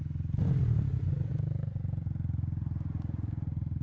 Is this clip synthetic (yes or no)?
no